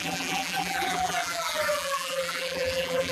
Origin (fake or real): fake